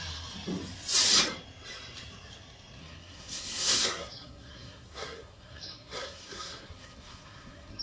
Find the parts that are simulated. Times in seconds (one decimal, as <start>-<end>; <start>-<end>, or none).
2.8-7.8